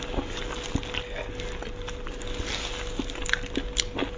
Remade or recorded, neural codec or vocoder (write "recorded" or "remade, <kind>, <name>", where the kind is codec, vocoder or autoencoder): recorded